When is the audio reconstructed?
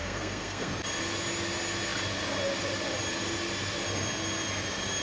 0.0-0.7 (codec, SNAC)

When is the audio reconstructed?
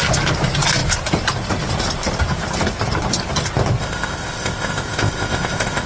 3.8-5.9 (codec, ZipCodec)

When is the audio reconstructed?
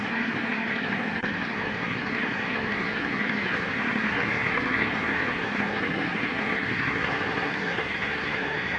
0.0-8.8 (codec, SNAC)